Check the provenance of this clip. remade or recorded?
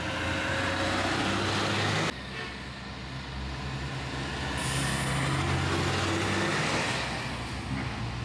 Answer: recorded